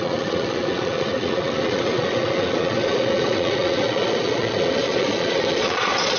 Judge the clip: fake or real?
fake